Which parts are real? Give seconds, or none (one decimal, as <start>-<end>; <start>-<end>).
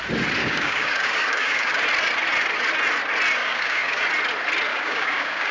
0.0-0.4; 1.7-3.4; 4.0-4.7